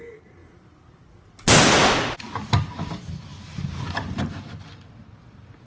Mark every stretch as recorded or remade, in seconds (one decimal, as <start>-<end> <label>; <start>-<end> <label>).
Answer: 0.0-3.3 recorded; 3.3-4.3 remade; 4.3-5.7 recorded